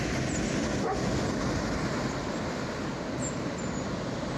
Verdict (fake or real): real